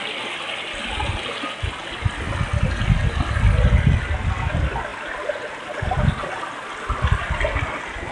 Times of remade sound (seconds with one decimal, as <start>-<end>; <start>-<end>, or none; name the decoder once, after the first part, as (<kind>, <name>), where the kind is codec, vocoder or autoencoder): none